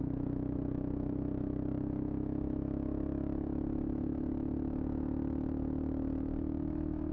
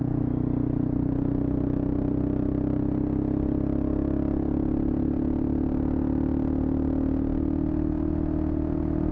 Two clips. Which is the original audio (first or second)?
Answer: second